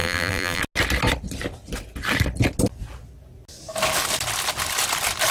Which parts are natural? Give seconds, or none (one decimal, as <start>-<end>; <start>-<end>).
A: 0.6-5.3